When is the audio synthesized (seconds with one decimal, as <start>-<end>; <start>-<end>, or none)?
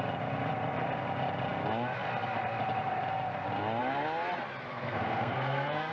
4.7-5.9